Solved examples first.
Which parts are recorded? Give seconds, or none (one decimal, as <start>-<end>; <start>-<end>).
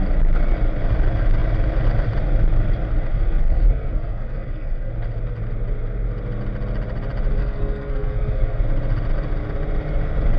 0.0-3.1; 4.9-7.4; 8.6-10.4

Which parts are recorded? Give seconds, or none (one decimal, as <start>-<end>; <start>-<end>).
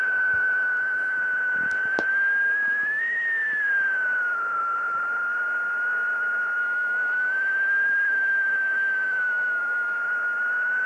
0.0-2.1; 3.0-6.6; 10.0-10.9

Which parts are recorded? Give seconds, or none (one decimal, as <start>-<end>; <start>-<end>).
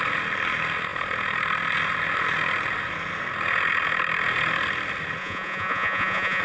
0.0-5.2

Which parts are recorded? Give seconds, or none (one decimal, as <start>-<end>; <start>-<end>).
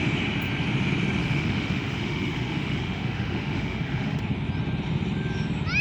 0.0-1.2; 4.2-5.8